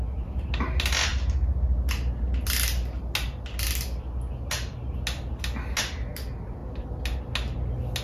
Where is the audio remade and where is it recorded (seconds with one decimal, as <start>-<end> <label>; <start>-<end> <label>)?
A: 0.0-8.0 recorded